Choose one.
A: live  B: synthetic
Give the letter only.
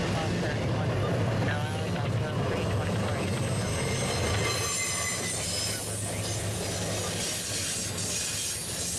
A